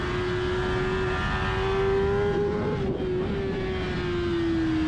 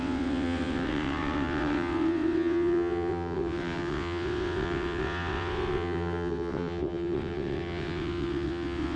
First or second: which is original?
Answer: first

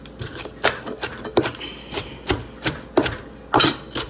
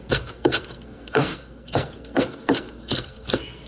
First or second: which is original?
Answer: first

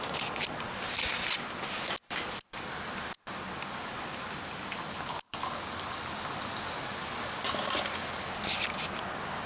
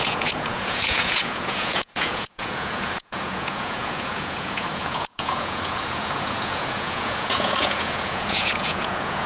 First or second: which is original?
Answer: first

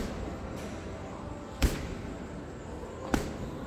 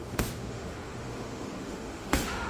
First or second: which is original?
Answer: first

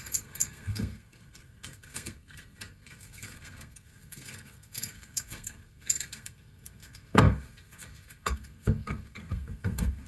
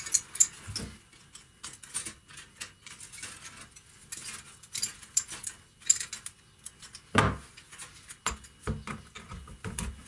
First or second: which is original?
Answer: second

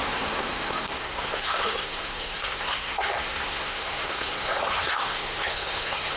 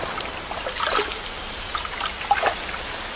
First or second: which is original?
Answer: second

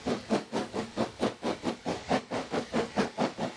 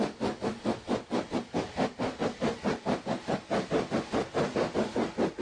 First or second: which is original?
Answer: second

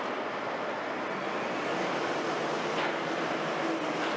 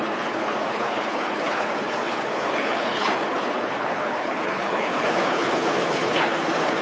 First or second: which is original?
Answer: first